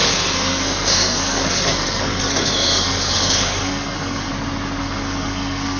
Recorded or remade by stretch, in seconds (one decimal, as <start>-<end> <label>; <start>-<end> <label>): 0.0-4.3 remade; 4.3-4.8 recorded; 4.8-5.8 remade